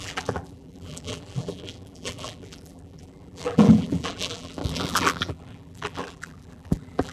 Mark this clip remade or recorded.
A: remade